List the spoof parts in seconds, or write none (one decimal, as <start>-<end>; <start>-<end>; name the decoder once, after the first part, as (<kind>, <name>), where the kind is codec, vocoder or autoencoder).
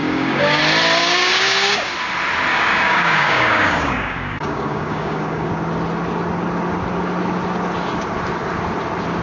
0.0-0.6 (codec, DAC); 1.0-1.9; 2.5-5.5